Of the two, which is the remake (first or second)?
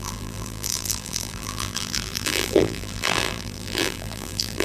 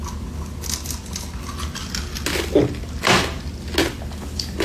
first